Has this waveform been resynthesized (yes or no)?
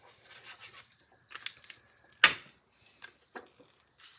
no